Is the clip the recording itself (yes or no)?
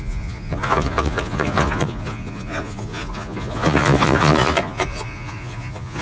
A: no